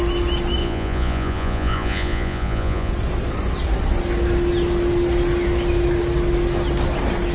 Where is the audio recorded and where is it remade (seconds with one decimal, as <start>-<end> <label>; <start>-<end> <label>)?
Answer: 0.0-0.6 recorded; 0.6-2.9 remade; 2.9-7.3 recorded